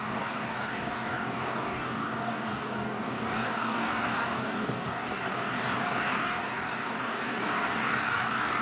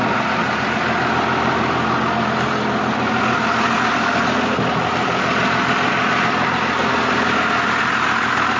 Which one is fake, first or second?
first